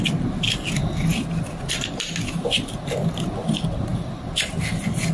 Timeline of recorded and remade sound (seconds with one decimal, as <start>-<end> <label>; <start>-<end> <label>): 0.0-5.1 recorded